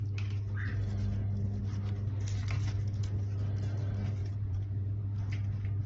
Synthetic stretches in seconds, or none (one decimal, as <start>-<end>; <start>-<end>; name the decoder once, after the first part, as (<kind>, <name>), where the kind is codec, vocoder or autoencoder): 4.2-5.0 (vocoder, Vocos)

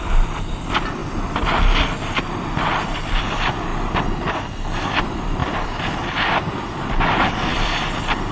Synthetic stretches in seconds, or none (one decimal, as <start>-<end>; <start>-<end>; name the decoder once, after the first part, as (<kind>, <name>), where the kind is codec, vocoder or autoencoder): 0.0-1.0 (vocoder, BigVGAN v2); 2.4-3.7; 5.0-8.3

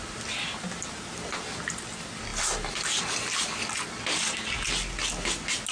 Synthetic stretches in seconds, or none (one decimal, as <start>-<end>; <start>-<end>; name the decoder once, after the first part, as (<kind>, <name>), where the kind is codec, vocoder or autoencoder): none

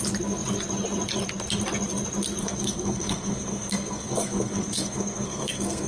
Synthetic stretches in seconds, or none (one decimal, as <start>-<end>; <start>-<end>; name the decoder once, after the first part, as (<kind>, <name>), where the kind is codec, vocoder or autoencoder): 2.4-5.9 (codec, SNAC)

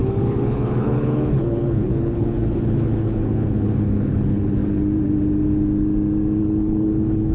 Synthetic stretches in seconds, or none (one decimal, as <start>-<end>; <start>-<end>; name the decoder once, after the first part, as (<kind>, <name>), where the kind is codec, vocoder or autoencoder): 0.0-4.6 (codec, HILCodec); 6.4-7.3